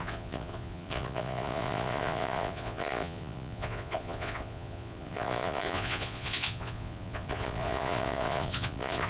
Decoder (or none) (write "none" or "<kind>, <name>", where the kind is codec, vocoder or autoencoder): vocoder, Vocos